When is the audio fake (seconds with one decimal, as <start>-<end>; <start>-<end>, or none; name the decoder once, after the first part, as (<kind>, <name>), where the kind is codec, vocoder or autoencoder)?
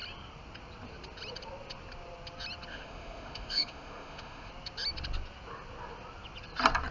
2.7-4.5 (autoencoder, DAC-VAE)